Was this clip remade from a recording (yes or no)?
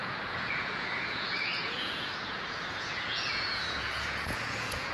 yes